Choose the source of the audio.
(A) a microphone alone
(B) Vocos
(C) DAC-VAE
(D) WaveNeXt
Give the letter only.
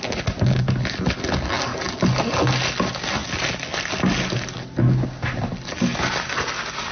A